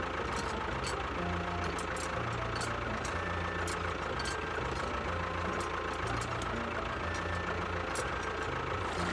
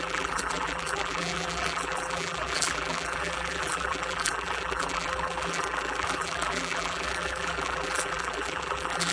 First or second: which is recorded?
first